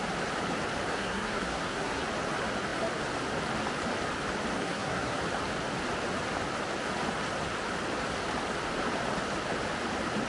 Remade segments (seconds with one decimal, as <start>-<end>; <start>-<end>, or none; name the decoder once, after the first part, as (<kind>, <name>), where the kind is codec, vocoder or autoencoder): 0.9-2.0 (codec, SNAC); 4.6-5.2

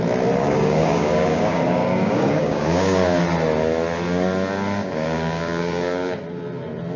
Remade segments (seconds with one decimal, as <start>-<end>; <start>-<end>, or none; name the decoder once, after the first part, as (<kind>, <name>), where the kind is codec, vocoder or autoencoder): 0.4-3.2 (codec, DAC); 4.8-6.2

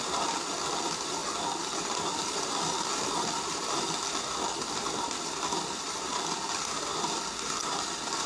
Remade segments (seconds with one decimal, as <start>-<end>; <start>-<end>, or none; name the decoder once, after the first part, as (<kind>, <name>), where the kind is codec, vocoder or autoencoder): none